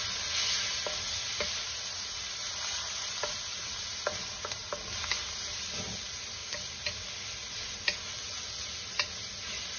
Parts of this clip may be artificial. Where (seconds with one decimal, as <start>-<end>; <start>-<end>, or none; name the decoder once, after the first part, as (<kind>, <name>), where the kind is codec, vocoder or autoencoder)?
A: none